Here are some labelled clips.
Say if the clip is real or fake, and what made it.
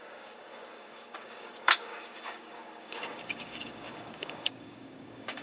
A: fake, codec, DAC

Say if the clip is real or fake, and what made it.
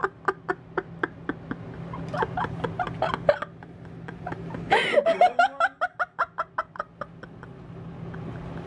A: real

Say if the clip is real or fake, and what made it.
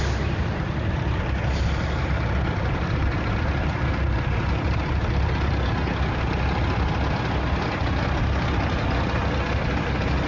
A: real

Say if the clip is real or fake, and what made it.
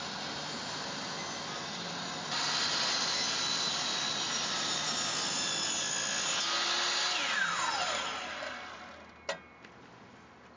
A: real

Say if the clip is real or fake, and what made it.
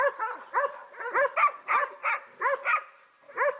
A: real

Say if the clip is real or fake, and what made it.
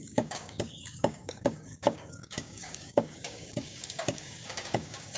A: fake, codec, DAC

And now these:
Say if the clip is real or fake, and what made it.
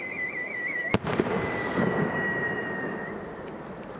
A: real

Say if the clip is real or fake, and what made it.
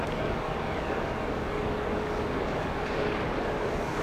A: fake, codec, DAC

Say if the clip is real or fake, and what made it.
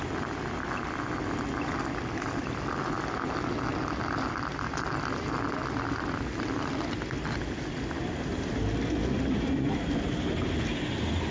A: real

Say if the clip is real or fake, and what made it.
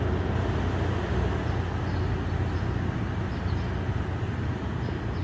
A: real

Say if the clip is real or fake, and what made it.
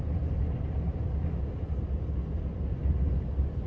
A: real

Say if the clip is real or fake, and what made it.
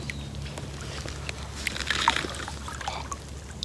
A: real